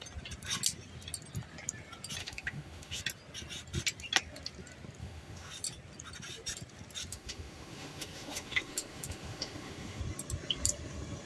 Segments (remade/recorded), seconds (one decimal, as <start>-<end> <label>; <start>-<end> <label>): 0.0-2.2 recorded; 2.2-3.0 remade; 3.0-5.0 recorded; 5.0-5.5 remade; 5.5-7.1 recorded; 7.1-10.0 remade; 10.0-11.3 recorded